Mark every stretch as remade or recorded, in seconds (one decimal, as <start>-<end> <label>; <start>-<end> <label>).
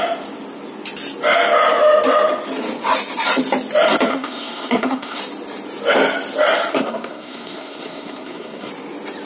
0.0-4.1 recorded; 4.1-5.2 remade; 5.2-6.7 recorded; 6.7-8.7 remade; 8.7-9.3 recorded